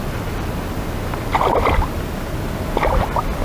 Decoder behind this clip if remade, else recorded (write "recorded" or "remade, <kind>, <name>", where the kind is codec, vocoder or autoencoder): recorded